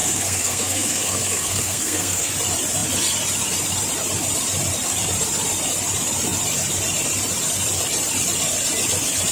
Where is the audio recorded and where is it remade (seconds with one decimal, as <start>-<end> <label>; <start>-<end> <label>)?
0.0-2.3 remade; 2.3-9.3 recorded